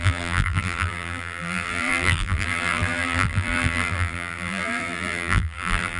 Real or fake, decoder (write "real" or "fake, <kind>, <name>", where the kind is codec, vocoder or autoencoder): fake, vocoder, BigVGAN v2